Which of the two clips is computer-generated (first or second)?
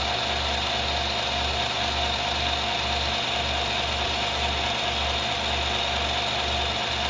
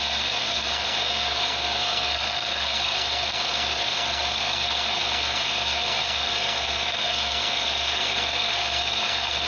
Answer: second